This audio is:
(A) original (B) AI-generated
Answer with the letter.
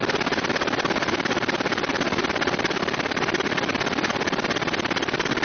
A